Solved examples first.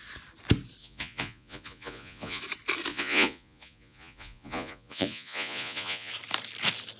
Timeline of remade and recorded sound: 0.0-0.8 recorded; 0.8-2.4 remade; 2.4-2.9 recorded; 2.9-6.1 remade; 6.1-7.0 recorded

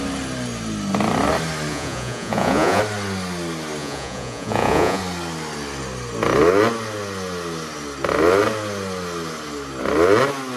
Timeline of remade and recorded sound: 0.0-1.7 recorded; 1.7-2.8 remade; 2.8-3.8 recorded; 3.8-5.0 remade; 5.0-10.6 recorded

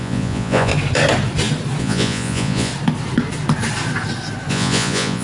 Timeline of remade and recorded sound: 0.0-0.7 remade; 0.7-1.8 recorded; 1.8-2.7 remade; 2.7-4.5 recorded; 4.5-5.2 remade

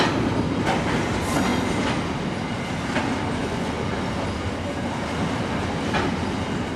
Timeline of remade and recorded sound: 0.0-3.4 recorded; 3.4-3.9 remade; 3.9-6.8 recorded